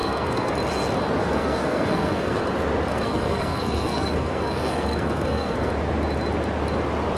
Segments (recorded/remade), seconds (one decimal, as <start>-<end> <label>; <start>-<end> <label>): 0.0-0.5 remade; 0.5-1.2 recorded; 1.2-2.4 remade; 2.4-2.9 recorded; 2.9-5.7 remade; 5.7-7.2 recorded